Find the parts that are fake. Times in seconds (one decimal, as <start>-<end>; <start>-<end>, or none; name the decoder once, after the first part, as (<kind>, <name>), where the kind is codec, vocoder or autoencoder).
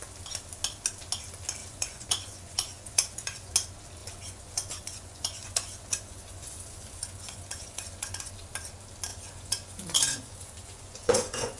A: 1.6-3.5 (vocoder, Vocos); 4.0-8.3; 9.1-11.6